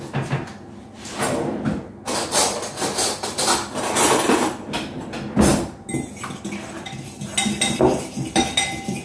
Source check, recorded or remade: recorded